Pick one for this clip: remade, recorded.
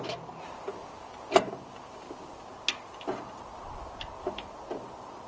recorded